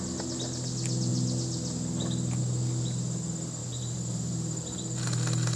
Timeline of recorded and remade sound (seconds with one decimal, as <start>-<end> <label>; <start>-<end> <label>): 0.0-3.6 recorded; 3.6-4.6 remade; 4.6-5.6 recorded